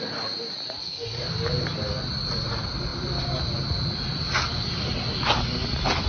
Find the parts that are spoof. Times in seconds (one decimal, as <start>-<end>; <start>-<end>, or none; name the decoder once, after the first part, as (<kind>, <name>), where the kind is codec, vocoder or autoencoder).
0.8-1.3 (codec, DAC)